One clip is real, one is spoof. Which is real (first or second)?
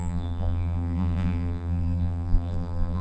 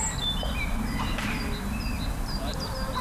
second